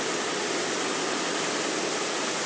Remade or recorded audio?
recorded